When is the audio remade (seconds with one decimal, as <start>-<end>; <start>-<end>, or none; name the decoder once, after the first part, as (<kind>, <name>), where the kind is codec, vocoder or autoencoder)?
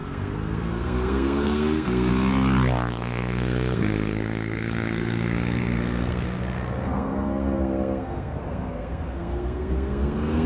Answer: 0.0-2.1 (codec, SNAC); 2.9-10.5